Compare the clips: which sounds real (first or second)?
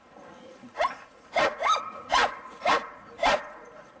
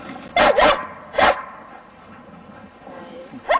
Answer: second